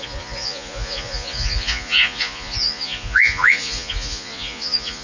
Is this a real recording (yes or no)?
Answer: no